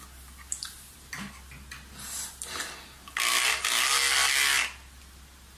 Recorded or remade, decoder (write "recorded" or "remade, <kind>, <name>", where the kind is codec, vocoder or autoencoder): recorded